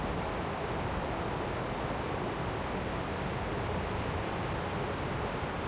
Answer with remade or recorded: recorded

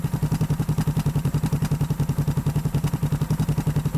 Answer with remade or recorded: recorded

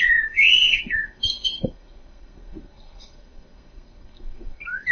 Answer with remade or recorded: remade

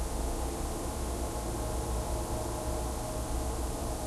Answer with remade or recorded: recorded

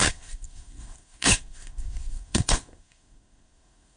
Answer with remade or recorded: remade